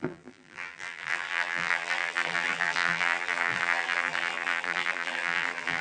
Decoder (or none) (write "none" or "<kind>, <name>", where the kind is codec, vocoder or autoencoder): vocoder, BigVGAN v2